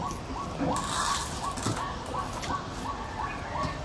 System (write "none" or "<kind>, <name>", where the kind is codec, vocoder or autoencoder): none